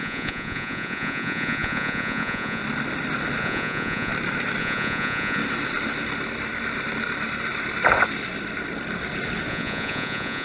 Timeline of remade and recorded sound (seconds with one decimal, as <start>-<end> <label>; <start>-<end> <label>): 0.0-2.6 remade; 2.6-3.4 recorded; 3.4-4.1 remade; 4.1-4.6 recorded; 4.6-5.4 remade; 5.4-9.5 recorded; 9.5-10.4 remade

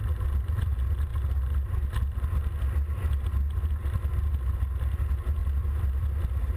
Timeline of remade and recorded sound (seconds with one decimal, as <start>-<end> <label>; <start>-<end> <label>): 0.0-6.6 recorded